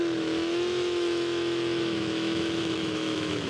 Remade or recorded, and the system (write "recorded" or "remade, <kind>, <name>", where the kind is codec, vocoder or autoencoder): remade, autoencoder, DAC-VAE